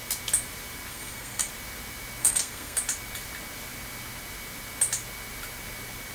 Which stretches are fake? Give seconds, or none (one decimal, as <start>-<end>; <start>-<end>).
0.9-1.5; 2.2-2.8